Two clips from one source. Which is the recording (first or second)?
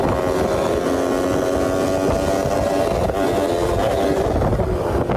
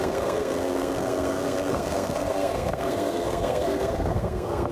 first